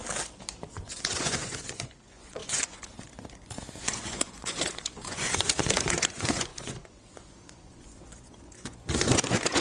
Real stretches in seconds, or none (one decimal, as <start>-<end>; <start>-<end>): 0.0-0.7